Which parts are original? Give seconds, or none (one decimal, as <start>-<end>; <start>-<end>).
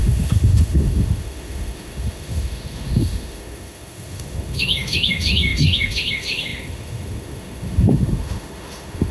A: none